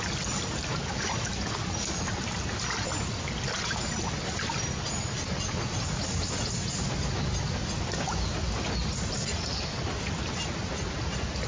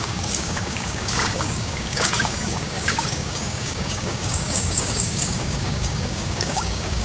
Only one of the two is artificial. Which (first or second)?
second